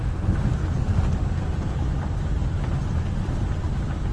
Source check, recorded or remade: recorded